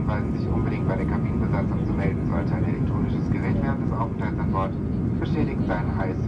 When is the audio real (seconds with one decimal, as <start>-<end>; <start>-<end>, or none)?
0.0-6.3